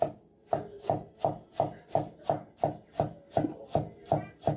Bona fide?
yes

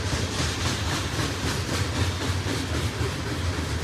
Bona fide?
yes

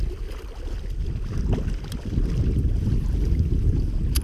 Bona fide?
yes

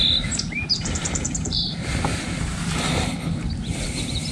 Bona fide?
no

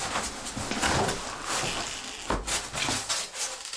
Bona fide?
yes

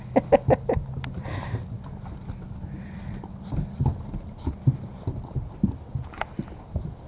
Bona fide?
yes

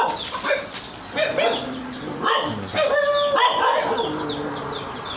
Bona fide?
yes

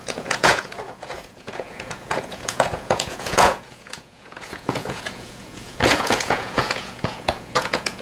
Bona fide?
no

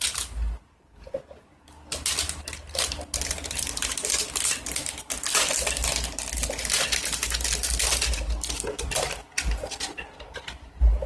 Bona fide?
yes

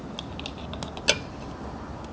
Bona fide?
yes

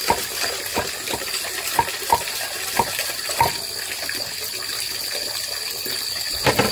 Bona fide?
yes